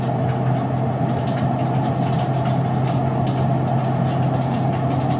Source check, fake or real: real